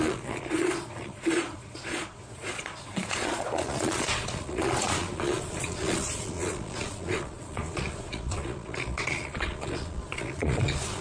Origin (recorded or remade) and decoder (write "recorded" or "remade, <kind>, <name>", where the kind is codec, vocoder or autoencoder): remade, vocoder, Vocos